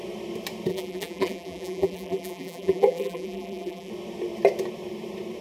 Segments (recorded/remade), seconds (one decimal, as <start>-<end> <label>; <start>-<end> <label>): 0.0-0.7 recorded; 0.7-3.9 remade; 3.9-5.4 recorded